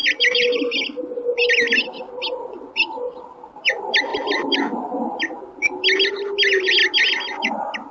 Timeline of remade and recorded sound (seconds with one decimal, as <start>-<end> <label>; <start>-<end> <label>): 0.0-7.9 recorded